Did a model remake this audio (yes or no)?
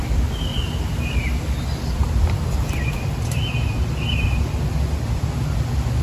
no